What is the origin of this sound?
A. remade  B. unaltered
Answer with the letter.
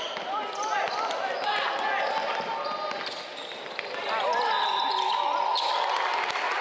B